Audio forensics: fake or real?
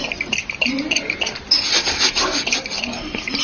real